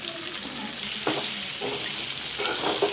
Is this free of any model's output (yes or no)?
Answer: yes